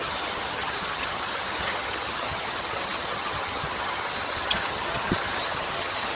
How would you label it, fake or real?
fake